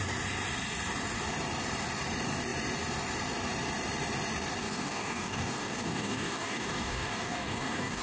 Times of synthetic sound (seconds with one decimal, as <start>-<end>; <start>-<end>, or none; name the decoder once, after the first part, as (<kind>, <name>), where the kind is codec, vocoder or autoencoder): 4.6-8.0 (codec, DAC)